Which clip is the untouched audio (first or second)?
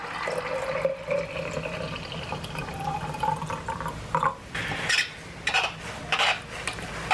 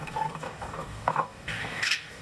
first